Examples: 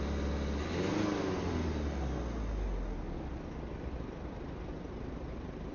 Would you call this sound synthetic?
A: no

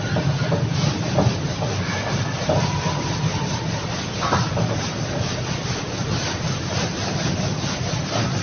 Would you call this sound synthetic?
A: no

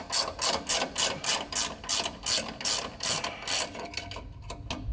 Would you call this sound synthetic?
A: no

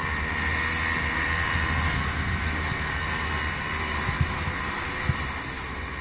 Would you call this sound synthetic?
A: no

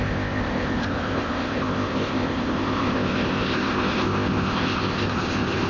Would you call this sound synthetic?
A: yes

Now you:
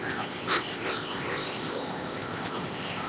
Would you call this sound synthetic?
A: yes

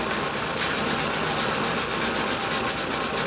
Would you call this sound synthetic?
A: no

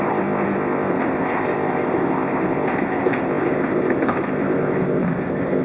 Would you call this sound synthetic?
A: yes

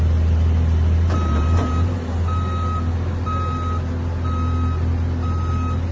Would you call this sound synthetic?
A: no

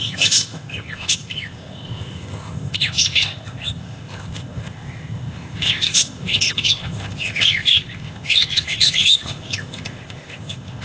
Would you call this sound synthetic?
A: yes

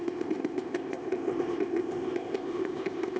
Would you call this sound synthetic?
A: yes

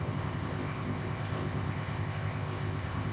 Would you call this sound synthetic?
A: yes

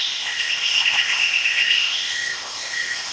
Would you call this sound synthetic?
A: yes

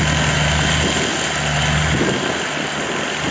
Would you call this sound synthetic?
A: no